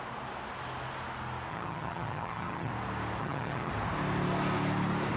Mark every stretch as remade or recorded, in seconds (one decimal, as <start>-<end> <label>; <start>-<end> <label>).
0.0-1.5 recorded; 1.5-2.7 remade; 2.7-3.2 recorded; 3.2-3.7 remade; 3.7-5.2 recorded